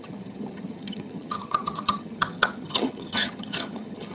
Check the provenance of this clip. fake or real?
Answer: fake